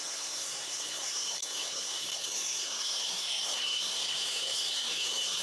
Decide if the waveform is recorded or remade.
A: remade